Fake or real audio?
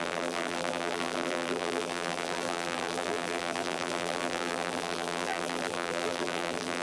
fake